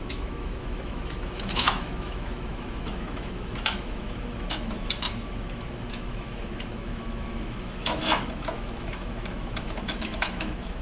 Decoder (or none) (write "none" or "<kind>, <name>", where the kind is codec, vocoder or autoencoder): autoencoder, DAC-VAE